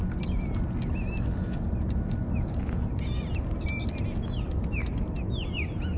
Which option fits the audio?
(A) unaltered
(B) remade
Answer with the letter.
A